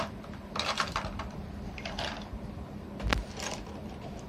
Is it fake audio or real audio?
fake